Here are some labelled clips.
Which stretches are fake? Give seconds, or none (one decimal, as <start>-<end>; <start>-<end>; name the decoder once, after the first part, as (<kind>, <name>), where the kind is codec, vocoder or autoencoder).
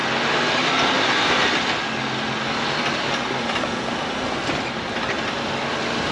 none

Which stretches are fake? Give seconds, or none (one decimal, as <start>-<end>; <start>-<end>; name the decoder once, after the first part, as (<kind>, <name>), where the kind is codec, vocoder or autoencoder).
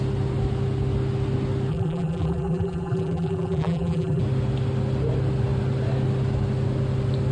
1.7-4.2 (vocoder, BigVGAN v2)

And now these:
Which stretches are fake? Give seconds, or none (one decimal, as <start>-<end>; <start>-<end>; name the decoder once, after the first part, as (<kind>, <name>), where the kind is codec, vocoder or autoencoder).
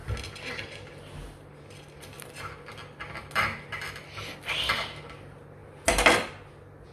none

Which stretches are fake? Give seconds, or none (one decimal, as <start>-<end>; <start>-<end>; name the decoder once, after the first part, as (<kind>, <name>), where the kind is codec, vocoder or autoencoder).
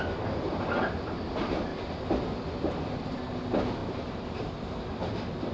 none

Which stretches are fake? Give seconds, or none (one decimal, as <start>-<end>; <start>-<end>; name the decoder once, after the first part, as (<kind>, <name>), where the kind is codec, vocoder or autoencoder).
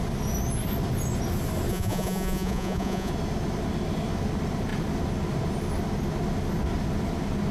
1.7-3.1 (vocoder, Vocos)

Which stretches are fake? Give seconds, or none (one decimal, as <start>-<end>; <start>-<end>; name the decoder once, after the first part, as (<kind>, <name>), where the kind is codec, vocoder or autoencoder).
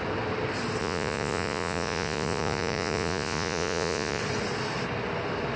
0.8-4.2 (vocoder, Vocos)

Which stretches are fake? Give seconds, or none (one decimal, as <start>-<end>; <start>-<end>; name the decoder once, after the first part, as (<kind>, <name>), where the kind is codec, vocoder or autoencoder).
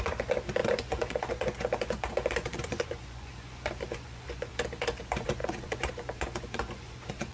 0.0-4.5 (vocoder, Vocos); 5.0-7.3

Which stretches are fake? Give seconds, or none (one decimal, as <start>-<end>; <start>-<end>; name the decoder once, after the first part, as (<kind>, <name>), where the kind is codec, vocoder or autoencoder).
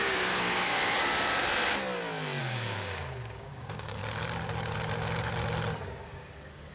0.0-0.8 (codec, DAC); 2.4-4.0; 5.9-6.7